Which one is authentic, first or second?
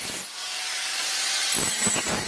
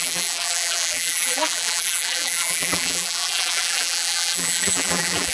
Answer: first